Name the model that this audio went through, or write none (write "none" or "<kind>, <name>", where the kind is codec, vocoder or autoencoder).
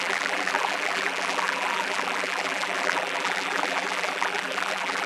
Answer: vocoder, BigVGAN v2